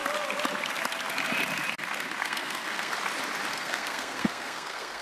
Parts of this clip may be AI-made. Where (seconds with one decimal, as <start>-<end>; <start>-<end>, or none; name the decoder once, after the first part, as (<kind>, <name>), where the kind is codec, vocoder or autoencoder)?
2.2-2.9 (codec, SNAC); 3.5-5.0